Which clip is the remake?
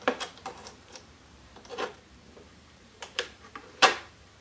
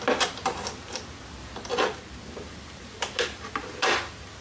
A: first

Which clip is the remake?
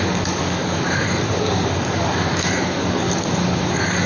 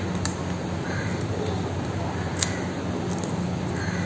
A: first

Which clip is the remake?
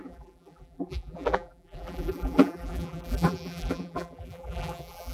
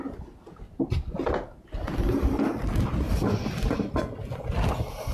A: first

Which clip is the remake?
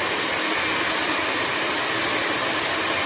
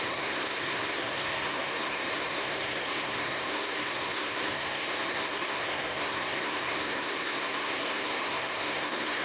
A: second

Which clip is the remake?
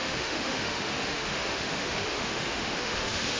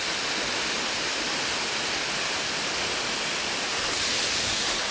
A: first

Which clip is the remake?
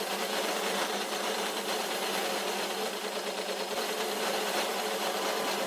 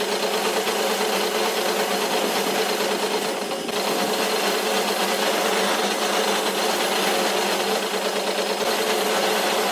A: first